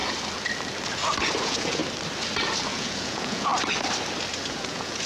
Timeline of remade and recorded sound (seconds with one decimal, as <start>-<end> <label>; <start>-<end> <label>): 0.0-1.4 recorded; 1.4-1.8 remade; 1.8-2.7 recorded; 2.7-3.5 remade; 3.5-4.5 recorded; 4.5-5.1 remade